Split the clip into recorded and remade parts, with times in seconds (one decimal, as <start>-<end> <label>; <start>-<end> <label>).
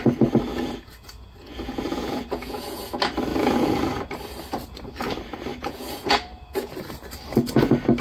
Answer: 0.0-0.5 recorded; 0.5-2.9 remade; 2.9-3.3 recorded; 3.3-4.0 remade; 4.0-5.5 recorded; 5.5-6.8 remade; 6.8-8.0 recorded